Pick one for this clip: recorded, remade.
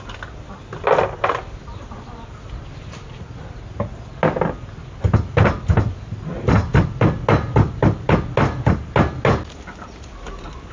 recorded